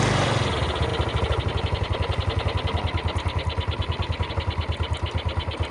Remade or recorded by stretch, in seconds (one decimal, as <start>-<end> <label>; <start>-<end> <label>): 0.0-5.7 recorded